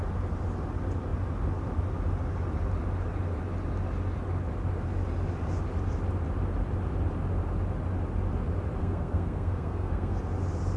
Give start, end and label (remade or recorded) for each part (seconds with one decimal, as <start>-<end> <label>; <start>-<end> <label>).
0.0-8.8 recorded; 8.8-10.2 remade; 10.2-10.8 recorded